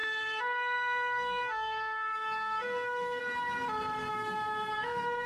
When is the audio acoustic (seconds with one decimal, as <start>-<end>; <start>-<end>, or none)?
3.2-4.1

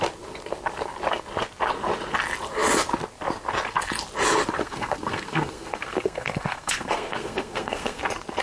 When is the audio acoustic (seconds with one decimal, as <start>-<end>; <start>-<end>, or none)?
0.0-4.6; 8.0-8.4